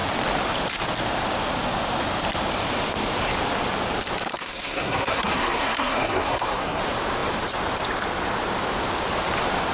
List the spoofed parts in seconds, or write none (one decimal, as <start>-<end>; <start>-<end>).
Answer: 4.3-6.8